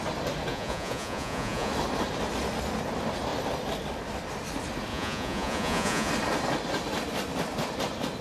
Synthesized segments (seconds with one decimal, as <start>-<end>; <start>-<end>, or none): 0.5-1.7; 4.9-6.1